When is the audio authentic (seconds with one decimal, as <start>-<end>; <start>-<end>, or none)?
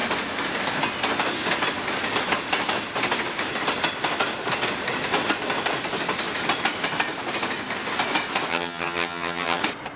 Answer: 0.0-8.5; 9.6-10.0